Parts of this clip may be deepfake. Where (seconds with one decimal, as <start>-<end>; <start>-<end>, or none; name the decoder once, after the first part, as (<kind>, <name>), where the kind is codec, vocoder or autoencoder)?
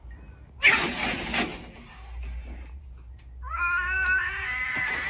none